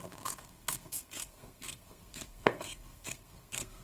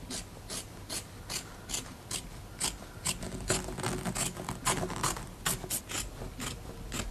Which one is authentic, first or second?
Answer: second